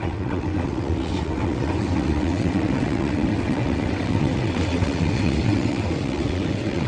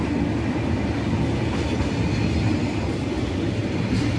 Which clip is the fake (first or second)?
first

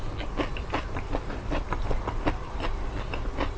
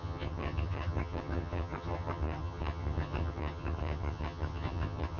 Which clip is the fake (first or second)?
second